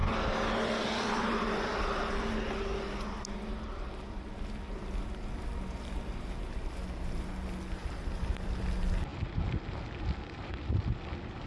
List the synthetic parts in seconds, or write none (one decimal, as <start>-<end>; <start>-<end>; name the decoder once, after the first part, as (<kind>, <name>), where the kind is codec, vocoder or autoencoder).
0.0-2.3 (vocoder, BigVGAN v2); 7.8-8.6